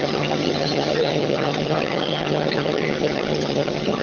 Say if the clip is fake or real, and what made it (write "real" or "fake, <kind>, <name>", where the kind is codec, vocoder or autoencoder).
fake, vocoder, HiFi-GAN